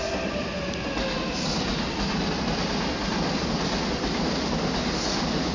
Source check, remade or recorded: recorded